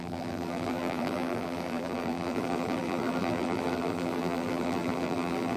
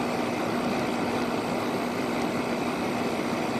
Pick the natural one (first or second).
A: second